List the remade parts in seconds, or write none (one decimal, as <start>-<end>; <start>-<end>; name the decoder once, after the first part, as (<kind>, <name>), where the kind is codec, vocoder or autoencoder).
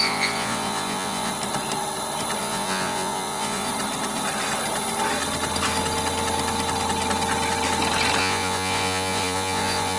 0.0-1.3 (vocoder, Vocos); 2.4-3.7; 8.2-10.0